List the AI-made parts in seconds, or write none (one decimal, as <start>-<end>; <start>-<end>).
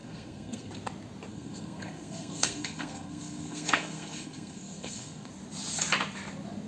0.0-0.7; 1.3-5.3